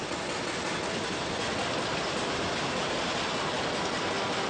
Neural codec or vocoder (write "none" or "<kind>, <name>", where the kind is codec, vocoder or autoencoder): none